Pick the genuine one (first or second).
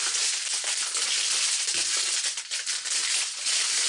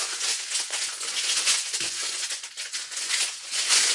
first